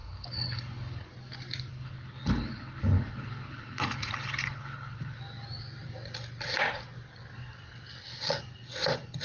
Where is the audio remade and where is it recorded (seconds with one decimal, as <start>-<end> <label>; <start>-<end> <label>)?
0.0-1.1 remade; 1.1-1.7 recorded; 1.7-5.2 remade; 5.2-9.2 recorded